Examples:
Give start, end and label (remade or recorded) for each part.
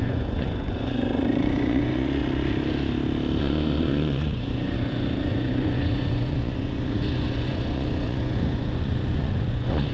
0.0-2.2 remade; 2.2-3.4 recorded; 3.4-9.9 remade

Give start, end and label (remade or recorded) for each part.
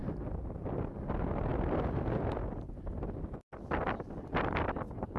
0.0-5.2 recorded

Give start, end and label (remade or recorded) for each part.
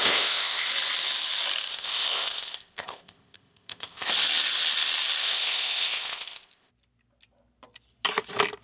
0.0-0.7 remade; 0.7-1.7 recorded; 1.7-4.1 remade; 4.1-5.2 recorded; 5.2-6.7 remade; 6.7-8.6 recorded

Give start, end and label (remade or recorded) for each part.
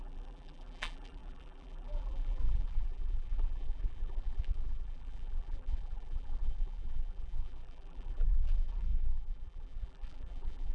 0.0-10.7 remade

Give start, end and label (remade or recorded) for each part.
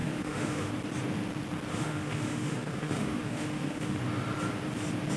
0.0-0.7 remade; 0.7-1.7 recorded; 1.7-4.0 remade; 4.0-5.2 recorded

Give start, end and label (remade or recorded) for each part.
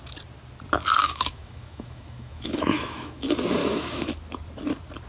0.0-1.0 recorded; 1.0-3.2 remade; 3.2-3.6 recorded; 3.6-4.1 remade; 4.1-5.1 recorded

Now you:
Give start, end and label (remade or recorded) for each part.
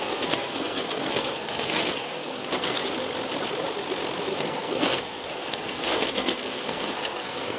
0.0-2.8 remade; 2.8-4.4 recorded; 4.4-7.6 remade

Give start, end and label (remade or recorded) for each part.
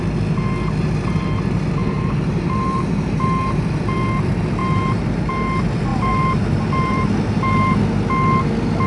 0.0-1.8 recorded; 1.8-3.6 remade; 3.6-4.6 recorded; 4.6-5.2 remade; 5.2-5.9 recorded; 5.9-7.8 remade; 7.8-8.9 recorded